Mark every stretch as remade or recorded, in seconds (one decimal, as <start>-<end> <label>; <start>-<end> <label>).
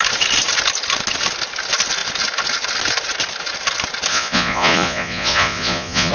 0.0-4.1 recorded; 4.1-6.1 remade